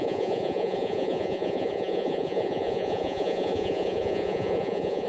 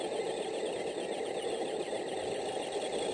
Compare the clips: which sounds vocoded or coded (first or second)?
first